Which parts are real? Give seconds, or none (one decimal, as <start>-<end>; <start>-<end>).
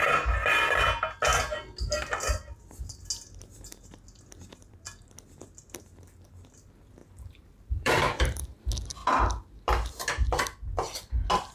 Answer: 0.0-7.0; 8.6-11.5